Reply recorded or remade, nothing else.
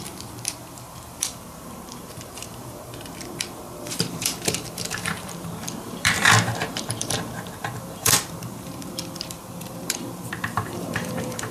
remade